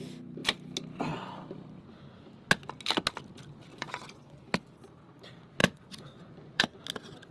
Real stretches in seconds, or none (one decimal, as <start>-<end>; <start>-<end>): 0.0-3.7; 4.4-5.6; 6.8-7.3